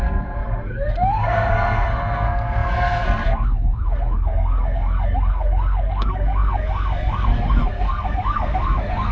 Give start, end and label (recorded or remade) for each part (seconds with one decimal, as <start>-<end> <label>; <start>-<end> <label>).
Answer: 0.0-9.1 remade